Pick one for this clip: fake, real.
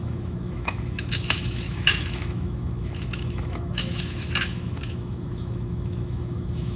fake